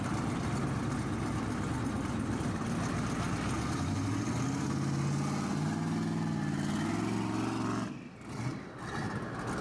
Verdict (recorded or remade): recorded